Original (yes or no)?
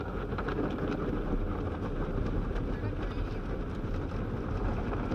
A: yes